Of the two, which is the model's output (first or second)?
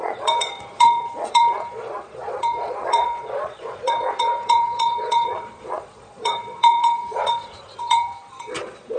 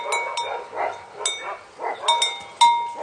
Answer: first